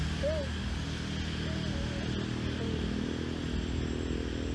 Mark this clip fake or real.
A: real